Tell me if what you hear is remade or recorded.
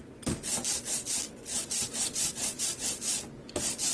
recorded